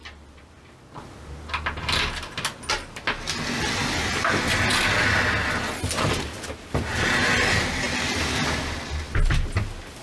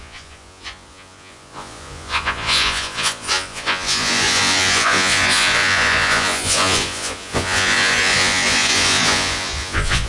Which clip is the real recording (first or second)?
first